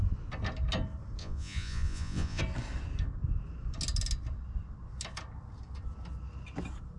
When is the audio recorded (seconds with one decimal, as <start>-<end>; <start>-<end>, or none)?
0.0-1.2; 2.4-7.0